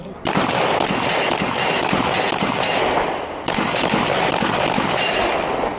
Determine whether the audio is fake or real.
real